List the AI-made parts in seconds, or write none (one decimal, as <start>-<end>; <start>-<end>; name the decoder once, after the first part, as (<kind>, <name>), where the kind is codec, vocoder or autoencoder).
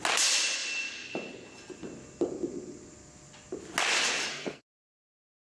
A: 4.3-4.9 (codec, SNAC)